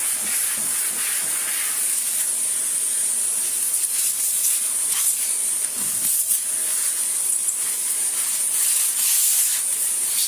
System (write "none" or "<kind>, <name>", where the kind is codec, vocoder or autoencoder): none